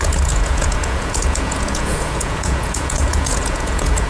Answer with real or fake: fake